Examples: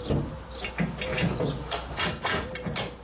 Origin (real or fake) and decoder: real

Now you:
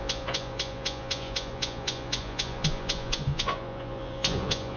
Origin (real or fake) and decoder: fake, vocoder, Vocos